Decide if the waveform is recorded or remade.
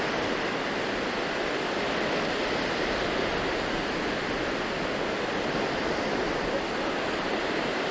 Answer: recorded